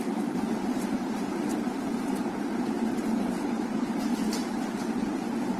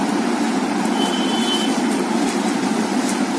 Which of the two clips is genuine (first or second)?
second